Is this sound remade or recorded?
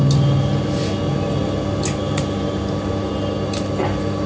recorded